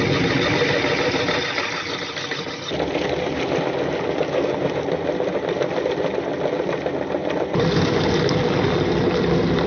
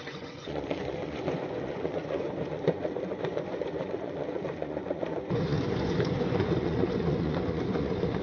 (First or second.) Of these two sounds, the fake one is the second